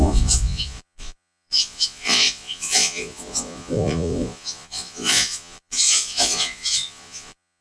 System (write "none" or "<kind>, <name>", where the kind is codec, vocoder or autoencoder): vocoder, Vocos